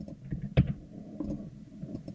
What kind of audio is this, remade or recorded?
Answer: recorded